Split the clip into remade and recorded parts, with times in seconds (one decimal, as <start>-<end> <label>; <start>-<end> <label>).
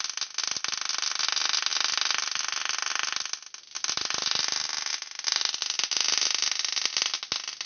0.0-7.7 recorded